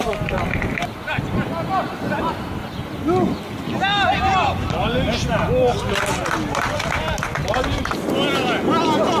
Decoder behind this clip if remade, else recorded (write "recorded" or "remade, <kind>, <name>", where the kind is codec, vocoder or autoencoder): recorded